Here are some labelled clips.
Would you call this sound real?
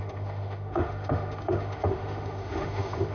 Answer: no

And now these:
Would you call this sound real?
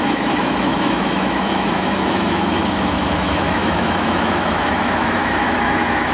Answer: no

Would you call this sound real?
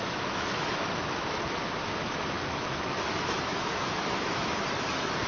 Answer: no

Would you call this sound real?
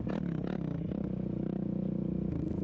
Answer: yes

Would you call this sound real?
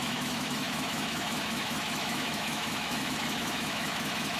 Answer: no